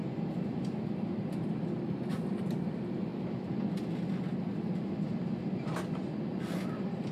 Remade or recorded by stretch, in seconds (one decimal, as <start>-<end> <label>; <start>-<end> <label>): 0.0-7.1 recorded